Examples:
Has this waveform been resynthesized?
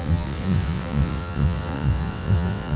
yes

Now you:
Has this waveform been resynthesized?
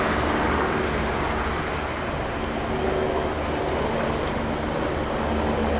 no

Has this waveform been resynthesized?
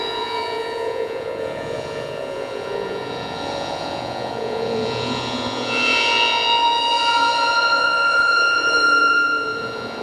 yes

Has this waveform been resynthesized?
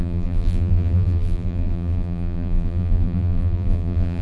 yes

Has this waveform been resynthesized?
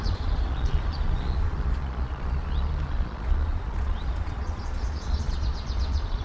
yes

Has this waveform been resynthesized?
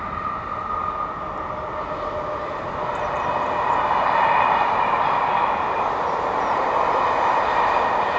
no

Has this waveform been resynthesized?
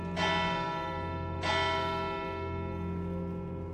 no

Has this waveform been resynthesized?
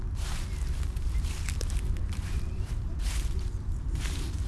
yes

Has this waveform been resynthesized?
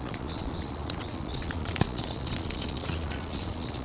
yes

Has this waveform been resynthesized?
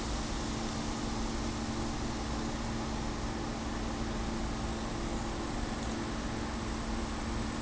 no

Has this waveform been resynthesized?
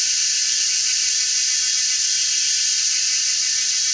no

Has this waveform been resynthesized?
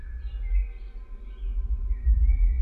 no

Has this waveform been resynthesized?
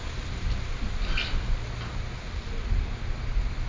no